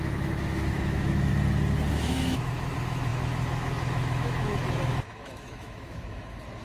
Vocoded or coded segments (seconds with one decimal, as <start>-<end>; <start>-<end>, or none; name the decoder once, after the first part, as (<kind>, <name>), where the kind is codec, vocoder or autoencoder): 0.0-1.3 (autoencoder, DAC-VAE); 1.9-6.6